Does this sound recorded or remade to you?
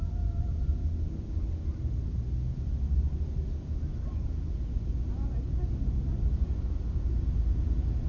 recorded